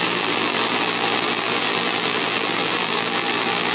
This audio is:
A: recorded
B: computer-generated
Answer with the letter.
B